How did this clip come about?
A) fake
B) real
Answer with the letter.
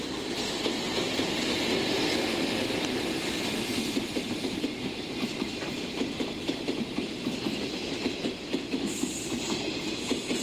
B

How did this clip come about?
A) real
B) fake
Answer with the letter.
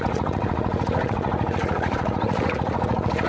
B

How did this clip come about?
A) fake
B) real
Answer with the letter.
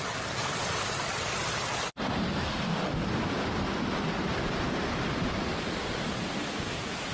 B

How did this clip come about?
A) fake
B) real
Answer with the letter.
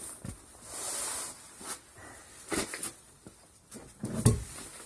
B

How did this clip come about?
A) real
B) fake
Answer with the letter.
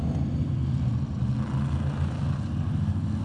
A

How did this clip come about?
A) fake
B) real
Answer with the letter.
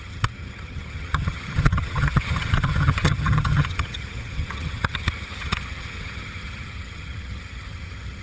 A